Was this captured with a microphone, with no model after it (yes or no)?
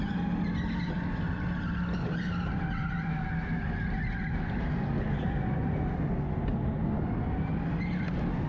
yes